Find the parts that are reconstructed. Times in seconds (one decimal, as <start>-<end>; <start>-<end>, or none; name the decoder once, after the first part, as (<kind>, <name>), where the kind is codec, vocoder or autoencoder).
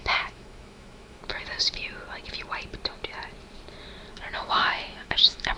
0.0-1.2 (autoencoder, DAC-VAE); 4.1-5.6